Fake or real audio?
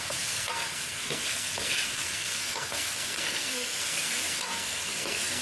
fake